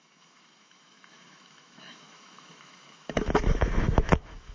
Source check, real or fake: fake